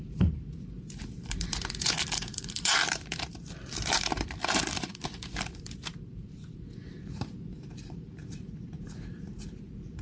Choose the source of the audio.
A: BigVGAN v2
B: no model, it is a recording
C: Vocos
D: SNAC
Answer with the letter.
A